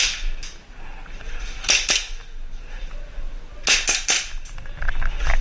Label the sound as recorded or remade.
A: recorded